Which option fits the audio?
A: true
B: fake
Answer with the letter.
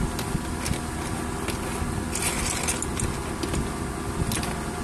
A